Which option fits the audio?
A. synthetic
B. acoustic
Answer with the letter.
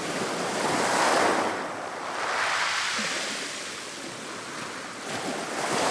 B